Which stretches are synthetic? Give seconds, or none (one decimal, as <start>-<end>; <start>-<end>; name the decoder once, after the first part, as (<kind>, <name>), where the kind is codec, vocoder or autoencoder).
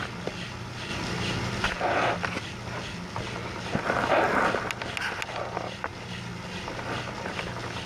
none